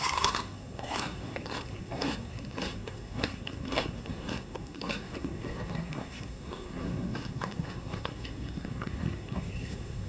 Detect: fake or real fake